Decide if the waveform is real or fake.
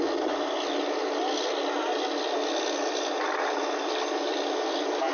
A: real